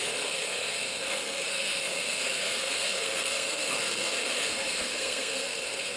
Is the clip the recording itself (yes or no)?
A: no